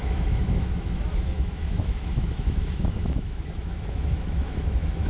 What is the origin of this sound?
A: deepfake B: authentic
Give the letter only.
A